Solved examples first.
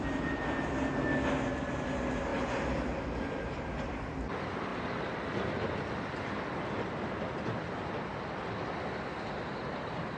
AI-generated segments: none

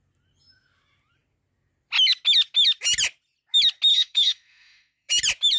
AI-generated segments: 3.9-5.1 (autoencoder, DAC-VAE)

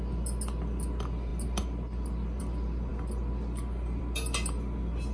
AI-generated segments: none

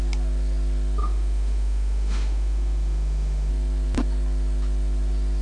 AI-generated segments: 1.0-3.5 (autoencoder, DAC-VAE)

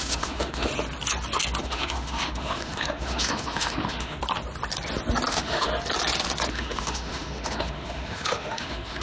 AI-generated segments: 0.0-0.7 (autoencoder, DAC-VAE); 1.6-4.2; 5.3-5.7; 6.5-9.0

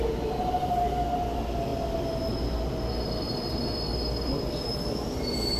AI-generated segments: none